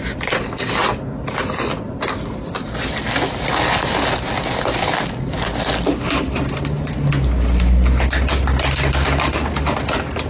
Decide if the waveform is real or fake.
real